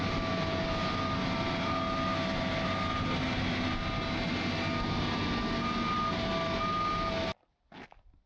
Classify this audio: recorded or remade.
recorded